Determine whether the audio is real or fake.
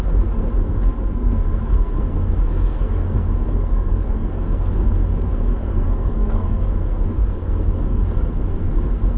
fake